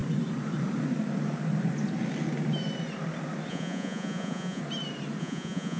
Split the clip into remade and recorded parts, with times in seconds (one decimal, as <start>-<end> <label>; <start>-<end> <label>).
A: 0.0-3.5 recorded; 3.5-4.6 remade; 4.6-5.2 recorded; 5.2-5.8 remade